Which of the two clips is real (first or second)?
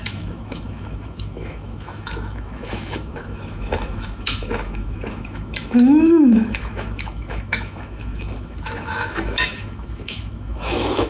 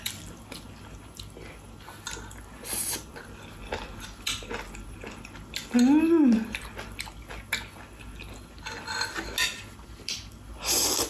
second